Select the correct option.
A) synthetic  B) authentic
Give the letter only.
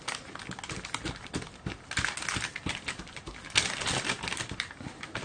B